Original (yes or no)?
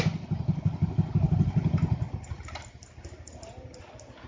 yes